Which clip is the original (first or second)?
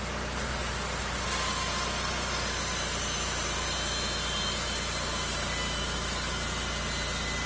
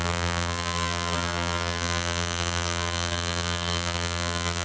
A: first